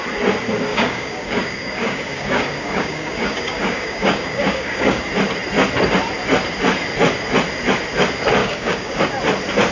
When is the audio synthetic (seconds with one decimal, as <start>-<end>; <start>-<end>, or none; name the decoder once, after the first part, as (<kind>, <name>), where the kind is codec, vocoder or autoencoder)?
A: 0.7-5.0 (codec, DAC); 8.4-9.1